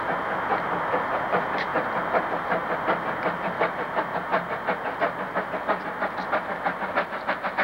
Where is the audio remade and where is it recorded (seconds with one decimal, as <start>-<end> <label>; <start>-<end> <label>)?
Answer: 0.0-7.6 recorded

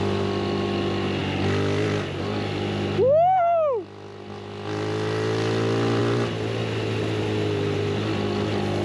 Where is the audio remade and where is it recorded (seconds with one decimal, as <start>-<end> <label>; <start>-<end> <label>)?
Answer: 0.0-8.8 recorded

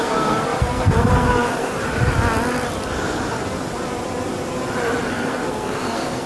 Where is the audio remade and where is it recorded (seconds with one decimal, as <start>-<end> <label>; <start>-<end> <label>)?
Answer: 0.0-1.7 remade; 1.7-5.1 recorded; 5.1-6.3 remade

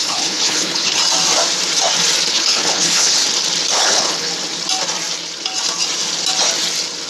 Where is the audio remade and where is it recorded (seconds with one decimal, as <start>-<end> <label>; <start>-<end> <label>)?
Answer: 0.0-1.0 remade; 1.0-2.3 recorded; 2.3-3.2 remade; 3.2-3.7 recorded; 3.7-4.3 remade; 4.3-7.1 recorded

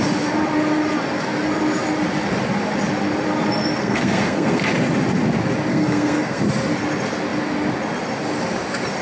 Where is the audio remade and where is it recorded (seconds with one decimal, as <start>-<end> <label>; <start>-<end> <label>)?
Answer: 0.0-3.8 recorded; 3.8-4.6 remade; 4.6-5.7 recorded; 5.7-6.4 remade; 6.4-9.0 recorded

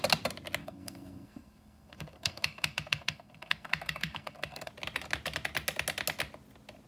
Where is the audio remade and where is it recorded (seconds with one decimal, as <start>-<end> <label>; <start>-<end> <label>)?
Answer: 0.0-0.6 recorded; 0.6-4.7 remade; 4.7-6.9 recorded

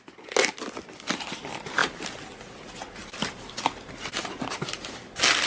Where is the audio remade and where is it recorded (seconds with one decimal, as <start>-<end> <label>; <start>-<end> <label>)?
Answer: 0.0-5.5 recorded